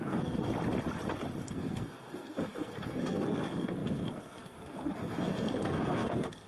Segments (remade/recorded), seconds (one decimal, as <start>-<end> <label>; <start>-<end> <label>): 0.0-0.5 remade; 0.5-1.5 recorded; 1.5-6.5 remade